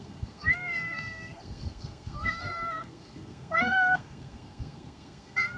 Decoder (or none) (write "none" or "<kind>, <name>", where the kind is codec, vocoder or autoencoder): codec, SNAC